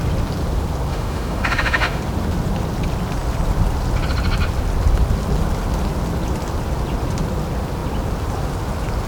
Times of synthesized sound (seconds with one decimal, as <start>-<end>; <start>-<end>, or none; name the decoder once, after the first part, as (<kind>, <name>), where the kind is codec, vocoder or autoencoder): 0.9-2.0 (autoencoder, DAC-VAE)